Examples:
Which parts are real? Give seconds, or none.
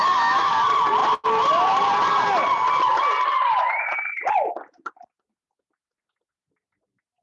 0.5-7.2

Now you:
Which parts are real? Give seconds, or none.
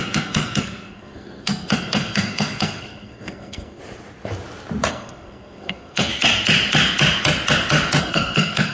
3.8-4.9; 6.1-8.0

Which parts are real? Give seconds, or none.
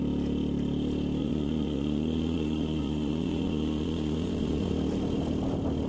0.0-1.2; 4.7-5.9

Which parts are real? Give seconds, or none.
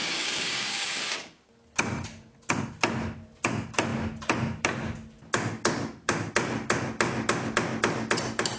1.5-8.6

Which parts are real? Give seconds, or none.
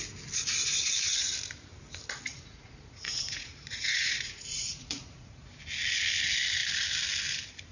0.0-2.3; 5.5-7.7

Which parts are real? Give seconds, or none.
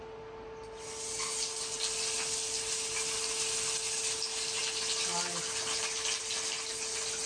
0.0-7.3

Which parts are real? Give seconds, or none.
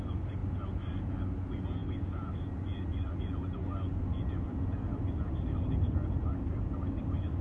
0.0-7.4